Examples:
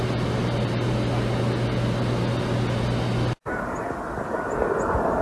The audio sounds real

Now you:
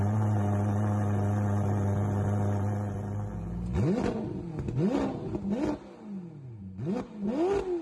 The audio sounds real